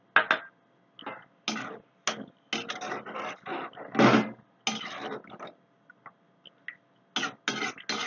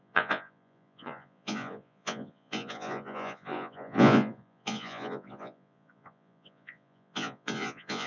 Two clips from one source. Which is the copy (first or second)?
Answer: second